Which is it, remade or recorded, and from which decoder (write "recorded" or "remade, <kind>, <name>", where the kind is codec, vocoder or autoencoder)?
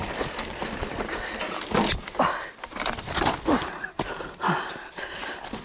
recorded